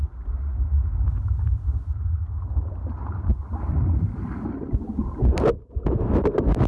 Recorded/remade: recorded